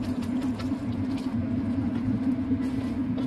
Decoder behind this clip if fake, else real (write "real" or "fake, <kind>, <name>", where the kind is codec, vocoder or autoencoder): real